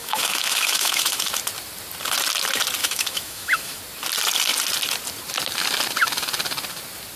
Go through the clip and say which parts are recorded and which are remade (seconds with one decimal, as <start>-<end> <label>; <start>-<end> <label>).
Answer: 0.0-1.3 remade; 1.3-2.8 recorded; 2.8-3.8 remade; 3.8-7.2 recorded